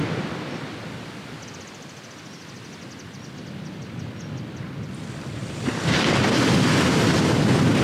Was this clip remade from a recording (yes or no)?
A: no